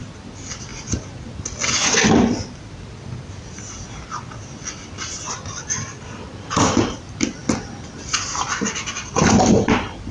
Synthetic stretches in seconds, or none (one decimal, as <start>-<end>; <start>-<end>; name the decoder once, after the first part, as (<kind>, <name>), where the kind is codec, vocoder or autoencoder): none